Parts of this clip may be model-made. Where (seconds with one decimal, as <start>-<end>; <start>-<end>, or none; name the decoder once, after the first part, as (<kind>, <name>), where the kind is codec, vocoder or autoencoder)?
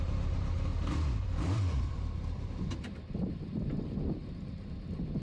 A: 0.0-0.7 (vocoder, BigVGAN v2); 1.2-5.2